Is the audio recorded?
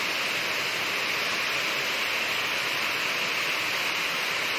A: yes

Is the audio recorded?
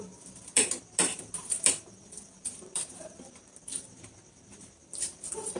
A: no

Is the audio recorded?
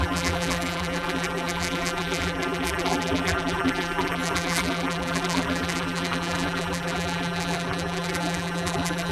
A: no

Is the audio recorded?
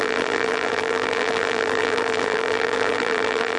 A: no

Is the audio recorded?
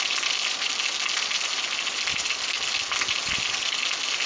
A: yes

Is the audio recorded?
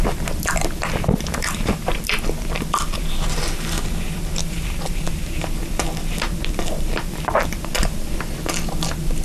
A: no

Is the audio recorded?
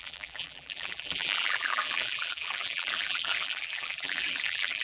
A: no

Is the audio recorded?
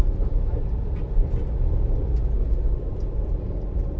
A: yes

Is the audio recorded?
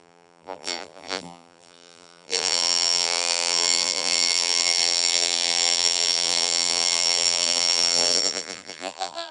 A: no